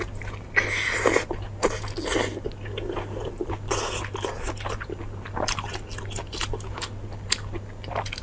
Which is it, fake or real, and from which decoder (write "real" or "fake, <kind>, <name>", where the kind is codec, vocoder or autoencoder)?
real